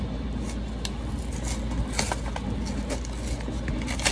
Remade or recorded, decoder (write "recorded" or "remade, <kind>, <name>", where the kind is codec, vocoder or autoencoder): recorded